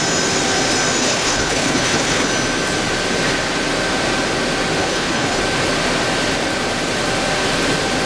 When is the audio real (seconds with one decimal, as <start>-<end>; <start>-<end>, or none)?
0.0-1.0; 2.3-4.8; 5.4-8.1